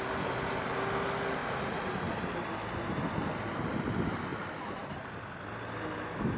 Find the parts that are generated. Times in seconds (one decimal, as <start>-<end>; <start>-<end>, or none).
1.4-1.9